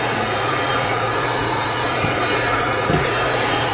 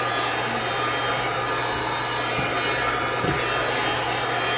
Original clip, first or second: second